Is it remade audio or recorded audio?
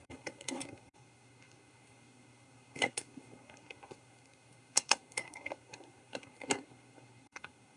remade